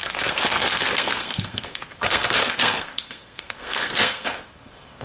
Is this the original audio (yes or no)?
no